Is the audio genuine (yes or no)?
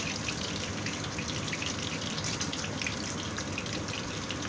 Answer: yes